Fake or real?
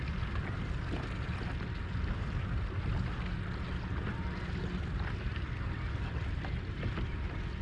real